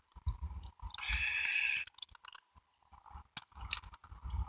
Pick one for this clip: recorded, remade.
recorded